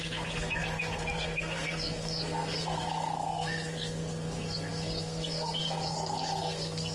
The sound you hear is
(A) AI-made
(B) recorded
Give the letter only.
A